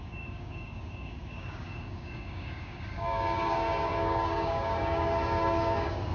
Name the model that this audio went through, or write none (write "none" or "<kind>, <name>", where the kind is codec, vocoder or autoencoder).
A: codec, DAC